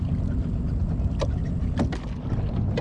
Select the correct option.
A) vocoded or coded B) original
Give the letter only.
B